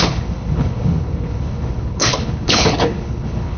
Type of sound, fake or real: fake